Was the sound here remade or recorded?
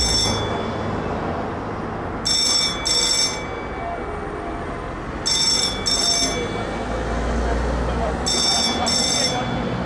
recorded